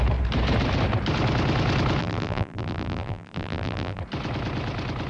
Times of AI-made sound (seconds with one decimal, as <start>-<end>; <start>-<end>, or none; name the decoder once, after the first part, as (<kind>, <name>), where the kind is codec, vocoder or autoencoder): 2.0-4.0 (vocoder, BigVGAN v2)